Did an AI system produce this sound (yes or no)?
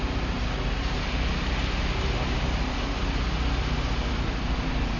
no